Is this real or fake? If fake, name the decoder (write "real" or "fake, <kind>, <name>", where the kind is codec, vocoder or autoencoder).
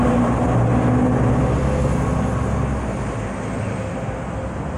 real